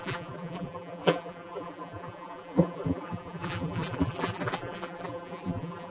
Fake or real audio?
fake